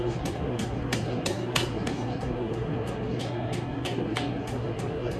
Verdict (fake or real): fake